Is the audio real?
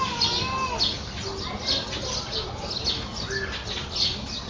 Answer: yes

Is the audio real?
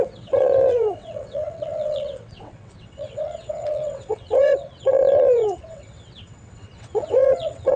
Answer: no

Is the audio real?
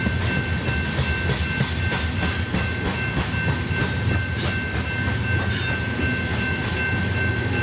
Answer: yes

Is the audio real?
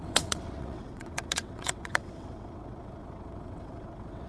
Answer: no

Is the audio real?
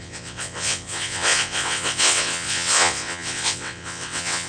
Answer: no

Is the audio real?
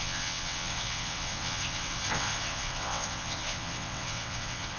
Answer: no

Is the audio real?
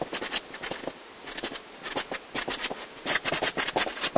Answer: yes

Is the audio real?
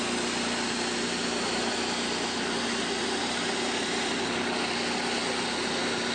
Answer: yes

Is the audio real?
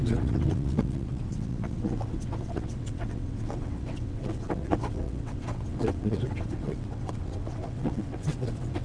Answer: no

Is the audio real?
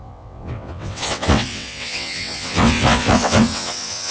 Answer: no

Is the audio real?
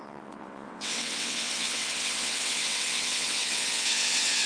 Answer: no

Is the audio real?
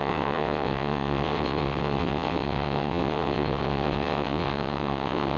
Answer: no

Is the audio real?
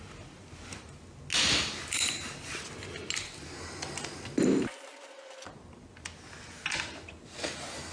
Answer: yes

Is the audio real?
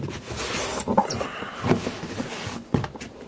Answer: yes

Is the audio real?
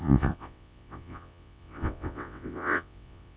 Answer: no